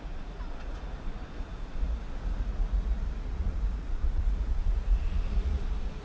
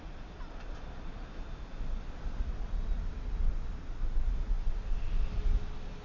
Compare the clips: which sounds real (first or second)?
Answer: second